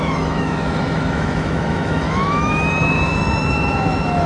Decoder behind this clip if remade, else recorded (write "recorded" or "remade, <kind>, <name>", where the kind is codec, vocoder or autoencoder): remade, autoencoder, DAC-VAE